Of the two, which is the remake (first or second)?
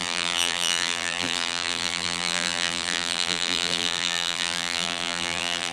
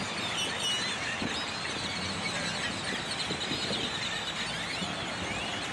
first